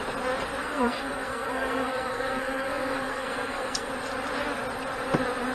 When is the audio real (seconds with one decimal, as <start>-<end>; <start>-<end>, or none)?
0.0-0.6; 3.9-5.5